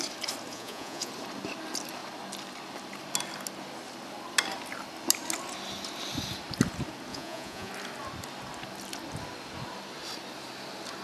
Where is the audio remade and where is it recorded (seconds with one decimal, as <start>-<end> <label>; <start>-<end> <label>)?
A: 0.0-0.5 recorded; 0.5-1.1 remade; 1.1-7.1 recorded; 7.1-7.7 remade; 7.7-11.0 recorded